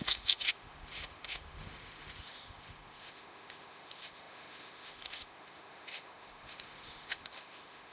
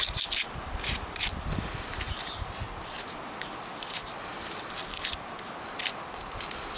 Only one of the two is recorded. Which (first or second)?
second